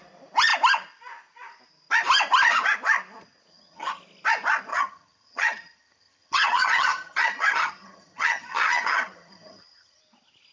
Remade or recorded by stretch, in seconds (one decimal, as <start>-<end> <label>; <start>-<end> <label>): 0.0-3.5 recorded; 3.5-4.0 remade; 4.0-4.7 recorded; 4.7-10.0 remade; 10.0-10.5 recorded